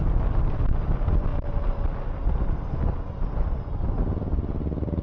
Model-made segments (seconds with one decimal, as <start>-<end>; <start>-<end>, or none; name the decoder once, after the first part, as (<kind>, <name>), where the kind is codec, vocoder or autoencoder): none